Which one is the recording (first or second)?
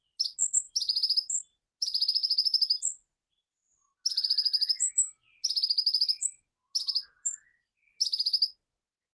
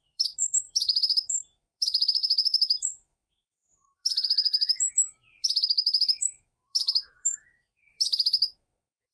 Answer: first